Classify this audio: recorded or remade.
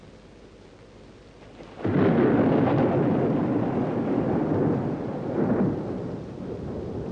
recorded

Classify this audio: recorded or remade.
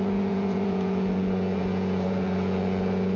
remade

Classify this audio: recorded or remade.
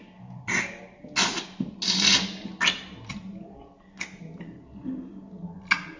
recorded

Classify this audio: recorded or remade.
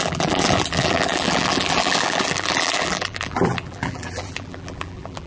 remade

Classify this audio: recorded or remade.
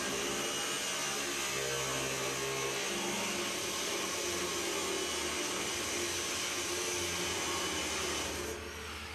recorded